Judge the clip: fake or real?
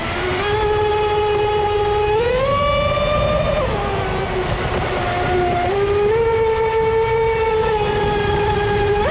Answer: real